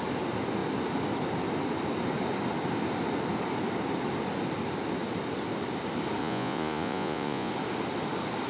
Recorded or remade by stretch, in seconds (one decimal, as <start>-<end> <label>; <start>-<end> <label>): 0.0-6.2 recorded; 6.2-7.5 remade; 7.5-8.5 recorded